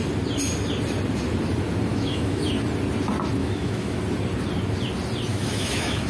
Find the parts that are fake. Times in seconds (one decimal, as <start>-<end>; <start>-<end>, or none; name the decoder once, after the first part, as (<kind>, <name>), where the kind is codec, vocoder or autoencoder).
1.9-2.5 (autoencoder, DAC-VAE); 3.4-4.0; 5.3-6.1